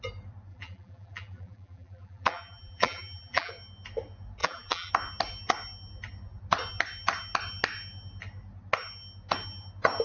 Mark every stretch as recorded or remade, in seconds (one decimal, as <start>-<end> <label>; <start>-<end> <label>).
0.0-0.5 recorded; 0.5-3.5 remade; 3.5-4.4 recorded; 4.4-4.9 remade; 4.9-10.0 recorded